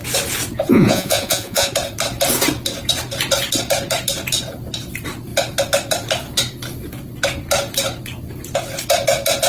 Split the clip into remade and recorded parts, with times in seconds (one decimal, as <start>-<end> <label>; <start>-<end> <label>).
0.0-0.7 recorded; 0.7-1.7 remade; 1.7-9.5 recorded